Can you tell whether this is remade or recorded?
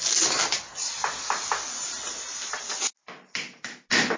recorded